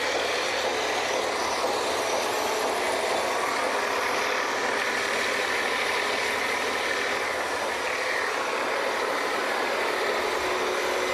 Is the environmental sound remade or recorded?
recorded